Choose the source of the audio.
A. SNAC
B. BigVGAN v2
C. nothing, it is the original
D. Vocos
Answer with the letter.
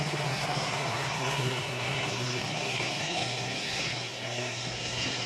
A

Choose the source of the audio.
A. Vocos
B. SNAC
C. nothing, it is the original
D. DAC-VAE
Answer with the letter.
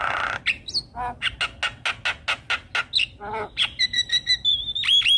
C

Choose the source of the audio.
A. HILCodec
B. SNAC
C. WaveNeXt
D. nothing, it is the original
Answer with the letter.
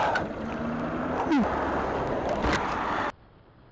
D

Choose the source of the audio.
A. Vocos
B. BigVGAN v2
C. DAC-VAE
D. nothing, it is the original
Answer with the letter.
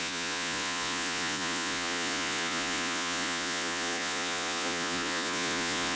A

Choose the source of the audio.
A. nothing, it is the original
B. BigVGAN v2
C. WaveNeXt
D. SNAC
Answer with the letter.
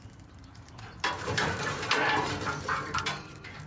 B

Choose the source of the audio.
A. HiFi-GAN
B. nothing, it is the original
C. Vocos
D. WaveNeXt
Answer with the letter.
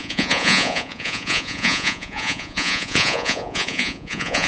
C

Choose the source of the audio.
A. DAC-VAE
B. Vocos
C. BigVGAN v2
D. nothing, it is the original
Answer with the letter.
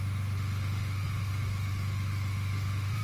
A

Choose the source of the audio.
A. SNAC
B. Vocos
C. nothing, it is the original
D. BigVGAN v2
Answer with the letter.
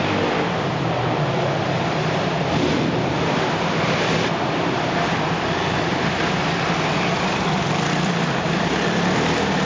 D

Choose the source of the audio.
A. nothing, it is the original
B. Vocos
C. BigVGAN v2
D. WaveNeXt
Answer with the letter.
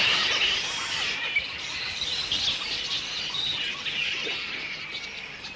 C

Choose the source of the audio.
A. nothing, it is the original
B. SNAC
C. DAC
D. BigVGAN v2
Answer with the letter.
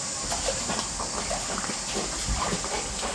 A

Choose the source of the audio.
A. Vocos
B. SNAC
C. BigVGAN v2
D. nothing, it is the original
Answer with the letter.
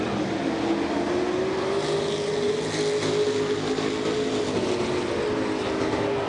D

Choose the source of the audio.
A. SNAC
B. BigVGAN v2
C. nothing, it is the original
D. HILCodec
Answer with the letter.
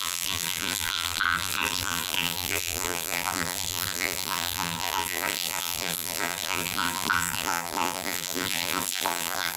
B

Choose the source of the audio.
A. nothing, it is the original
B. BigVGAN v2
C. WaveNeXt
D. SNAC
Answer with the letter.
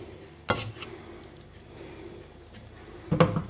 A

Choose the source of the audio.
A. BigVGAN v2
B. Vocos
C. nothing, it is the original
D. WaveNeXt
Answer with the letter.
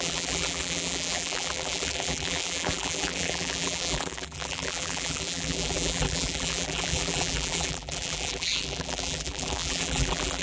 A